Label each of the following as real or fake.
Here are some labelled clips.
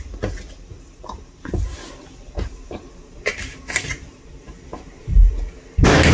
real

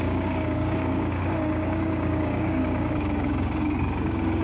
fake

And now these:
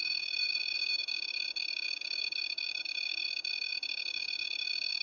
fake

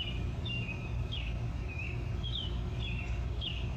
fake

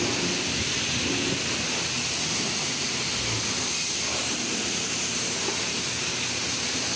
real